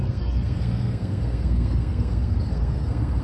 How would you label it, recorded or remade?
remade